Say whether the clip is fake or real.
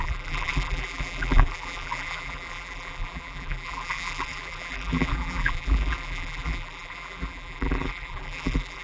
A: fake